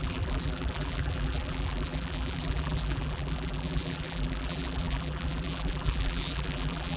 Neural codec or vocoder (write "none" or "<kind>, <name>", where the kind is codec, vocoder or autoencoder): vocoder, BigVGAN v2